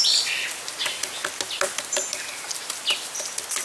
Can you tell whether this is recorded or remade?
recorded